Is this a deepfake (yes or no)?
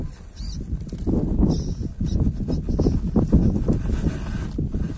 no